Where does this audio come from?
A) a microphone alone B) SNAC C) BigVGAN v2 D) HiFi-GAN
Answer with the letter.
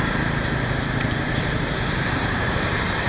C